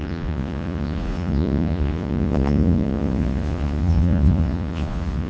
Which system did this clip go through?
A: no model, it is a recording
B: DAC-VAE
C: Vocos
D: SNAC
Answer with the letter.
C